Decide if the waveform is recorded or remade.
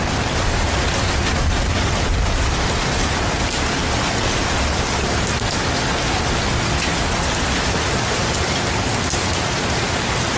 recorded